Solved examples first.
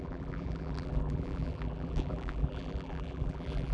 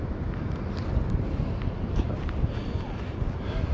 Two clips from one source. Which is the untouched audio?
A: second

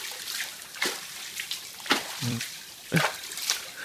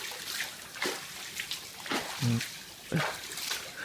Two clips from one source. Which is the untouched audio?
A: second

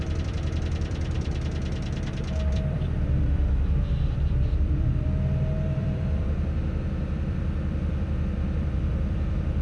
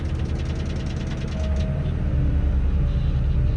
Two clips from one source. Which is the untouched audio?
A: second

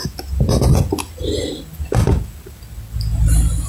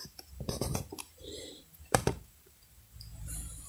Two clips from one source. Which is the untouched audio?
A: first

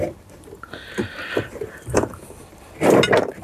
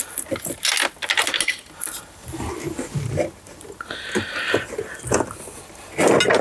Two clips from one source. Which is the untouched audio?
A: second